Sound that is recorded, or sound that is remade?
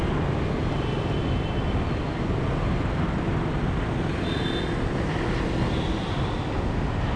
recorded